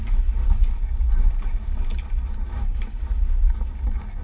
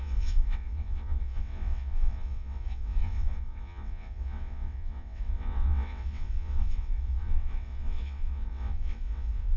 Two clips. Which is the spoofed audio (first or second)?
second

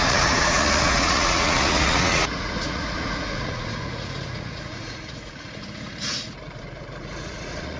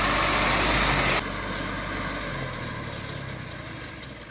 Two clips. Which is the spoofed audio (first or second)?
first